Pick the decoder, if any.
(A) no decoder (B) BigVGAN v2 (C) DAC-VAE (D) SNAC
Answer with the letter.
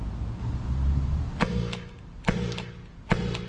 A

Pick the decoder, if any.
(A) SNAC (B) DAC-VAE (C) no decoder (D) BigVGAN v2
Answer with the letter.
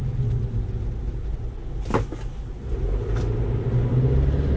C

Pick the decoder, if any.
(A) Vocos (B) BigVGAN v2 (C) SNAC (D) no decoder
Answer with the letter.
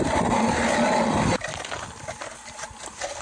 D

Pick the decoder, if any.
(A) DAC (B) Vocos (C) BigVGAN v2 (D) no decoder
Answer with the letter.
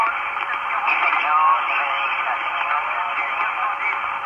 C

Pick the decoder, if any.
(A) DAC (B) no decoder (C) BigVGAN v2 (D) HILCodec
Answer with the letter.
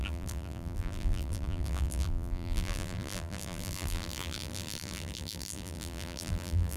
C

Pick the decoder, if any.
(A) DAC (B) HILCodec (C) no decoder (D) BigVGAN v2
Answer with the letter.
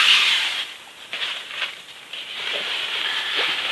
D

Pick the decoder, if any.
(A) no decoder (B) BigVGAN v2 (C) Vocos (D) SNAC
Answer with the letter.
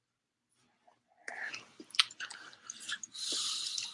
B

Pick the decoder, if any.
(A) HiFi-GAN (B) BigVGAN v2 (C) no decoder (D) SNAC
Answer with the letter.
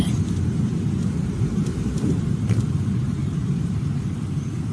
B